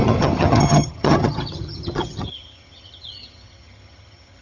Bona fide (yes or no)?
no